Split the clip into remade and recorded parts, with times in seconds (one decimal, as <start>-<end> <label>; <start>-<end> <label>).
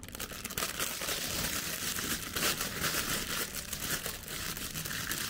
0.0-0.5 recorded; 0.5-2.1 remade; 2.1-5.3 recorded